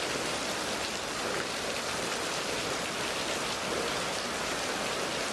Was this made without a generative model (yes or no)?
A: no